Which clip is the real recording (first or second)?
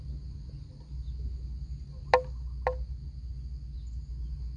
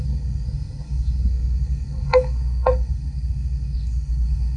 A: first